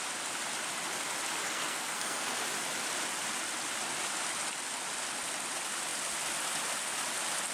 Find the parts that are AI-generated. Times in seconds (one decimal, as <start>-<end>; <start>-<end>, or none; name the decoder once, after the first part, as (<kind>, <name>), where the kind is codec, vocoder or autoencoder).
1.4-2.4 (codec, SNAC)